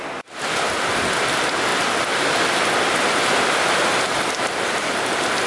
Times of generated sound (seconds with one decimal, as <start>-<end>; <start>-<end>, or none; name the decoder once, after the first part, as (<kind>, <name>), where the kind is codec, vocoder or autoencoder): none

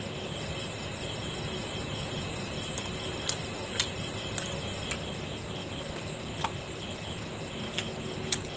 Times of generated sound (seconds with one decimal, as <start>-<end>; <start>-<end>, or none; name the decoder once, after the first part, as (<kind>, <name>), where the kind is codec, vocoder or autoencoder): none

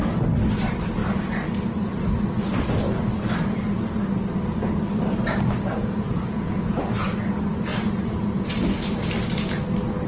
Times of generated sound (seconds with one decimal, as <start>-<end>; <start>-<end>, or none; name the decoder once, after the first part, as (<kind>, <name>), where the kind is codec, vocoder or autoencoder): 5.8-6.6 (vocoder, Vocos); 7.7-8.5

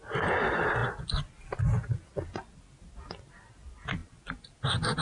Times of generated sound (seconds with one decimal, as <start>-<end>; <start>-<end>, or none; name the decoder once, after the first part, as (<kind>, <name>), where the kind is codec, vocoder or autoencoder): none

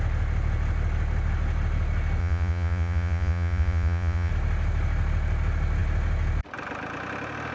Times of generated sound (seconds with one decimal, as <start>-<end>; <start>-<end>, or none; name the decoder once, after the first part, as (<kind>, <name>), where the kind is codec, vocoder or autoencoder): 2.2-4.3 (vocoder, Vocos)

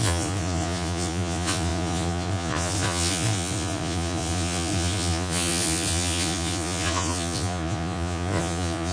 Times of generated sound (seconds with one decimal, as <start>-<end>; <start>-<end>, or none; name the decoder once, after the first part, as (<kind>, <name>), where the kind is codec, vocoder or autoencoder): 0.0-8.9 (vocoder, Vocos)